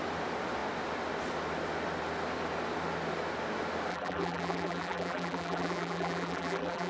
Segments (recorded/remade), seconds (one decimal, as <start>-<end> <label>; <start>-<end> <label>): 0.0-3.9 recorded; 3.9-6.9 remade